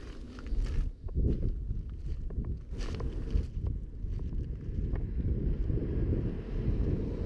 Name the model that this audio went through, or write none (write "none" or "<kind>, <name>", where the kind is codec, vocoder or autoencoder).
none